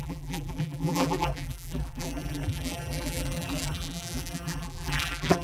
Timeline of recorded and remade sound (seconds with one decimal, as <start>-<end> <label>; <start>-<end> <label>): 0.0-5.4 remade